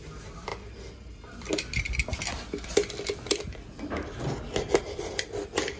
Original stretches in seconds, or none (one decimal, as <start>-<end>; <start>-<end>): 0.0-5.8